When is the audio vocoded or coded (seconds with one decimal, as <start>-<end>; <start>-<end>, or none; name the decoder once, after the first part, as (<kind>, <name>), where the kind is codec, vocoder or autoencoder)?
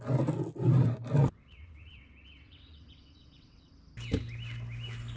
1.2-3.7 (vocoder, WaveNeXt)